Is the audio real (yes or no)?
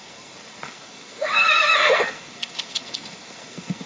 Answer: no